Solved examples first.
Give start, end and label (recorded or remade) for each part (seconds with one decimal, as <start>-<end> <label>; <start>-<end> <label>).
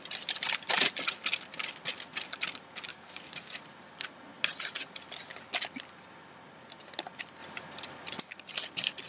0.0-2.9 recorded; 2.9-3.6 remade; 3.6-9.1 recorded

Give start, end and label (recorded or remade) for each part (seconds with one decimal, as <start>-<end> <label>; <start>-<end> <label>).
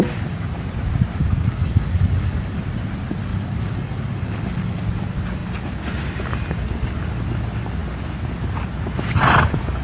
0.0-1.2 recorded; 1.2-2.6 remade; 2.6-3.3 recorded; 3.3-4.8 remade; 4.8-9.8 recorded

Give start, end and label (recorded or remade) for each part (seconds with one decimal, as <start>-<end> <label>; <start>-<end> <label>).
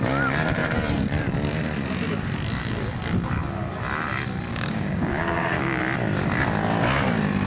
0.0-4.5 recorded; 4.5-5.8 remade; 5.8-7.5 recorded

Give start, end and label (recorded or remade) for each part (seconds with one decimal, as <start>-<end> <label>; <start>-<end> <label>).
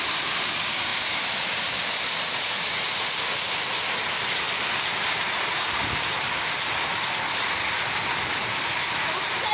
0.0-9.5 recorded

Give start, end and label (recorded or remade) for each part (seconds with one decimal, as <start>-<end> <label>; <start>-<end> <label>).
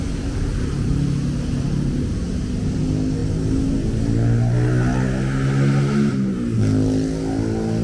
0.0-7.8 recorded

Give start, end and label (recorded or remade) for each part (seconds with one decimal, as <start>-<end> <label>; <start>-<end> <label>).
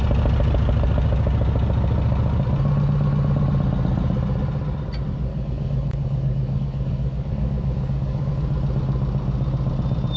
0.0-5.3 recorded; 5.3-8.3 remade; 8.3-10.2 recorded